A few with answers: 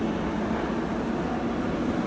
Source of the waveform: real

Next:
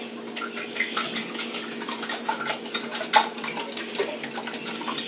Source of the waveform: real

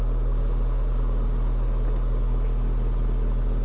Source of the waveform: real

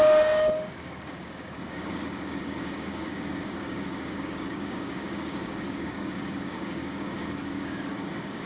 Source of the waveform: fake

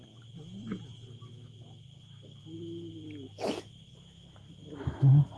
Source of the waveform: fake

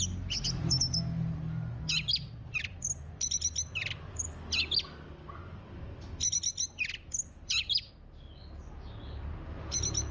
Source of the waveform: real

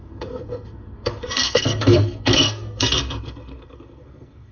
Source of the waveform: fake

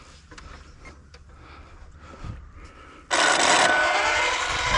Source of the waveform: real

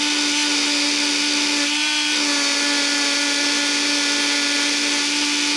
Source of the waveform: real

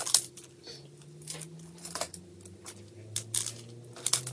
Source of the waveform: real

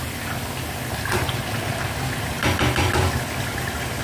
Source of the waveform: real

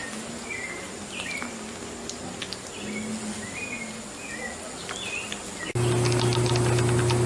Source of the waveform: real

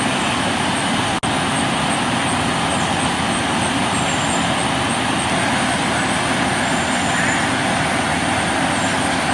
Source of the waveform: real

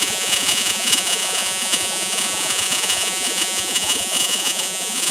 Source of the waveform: fake